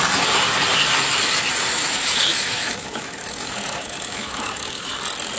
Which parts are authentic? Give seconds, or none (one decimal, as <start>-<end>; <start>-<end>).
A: 0.0-1.7; 4.9-5.4